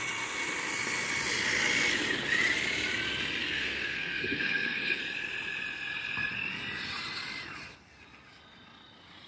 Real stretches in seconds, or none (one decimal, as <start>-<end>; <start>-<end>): 0.0-3.4; 5.0-9.3